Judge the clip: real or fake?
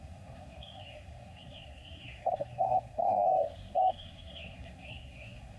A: fake